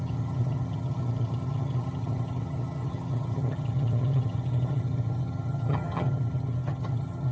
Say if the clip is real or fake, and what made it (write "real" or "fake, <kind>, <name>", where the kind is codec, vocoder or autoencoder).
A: fake, vocoder, HiFi-GAN